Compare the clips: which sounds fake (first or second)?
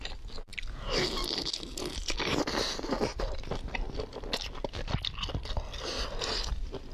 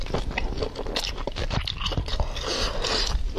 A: second